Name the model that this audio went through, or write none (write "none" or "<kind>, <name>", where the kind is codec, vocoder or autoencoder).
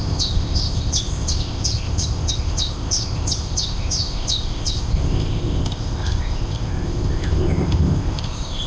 codec, ZipCodec